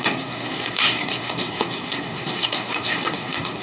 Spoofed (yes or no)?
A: yes